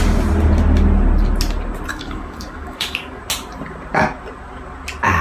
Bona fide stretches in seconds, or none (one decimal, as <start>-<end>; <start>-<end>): 0.0-1.9; 3.2-5.2